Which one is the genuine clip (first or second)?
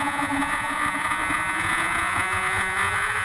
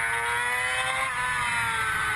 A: second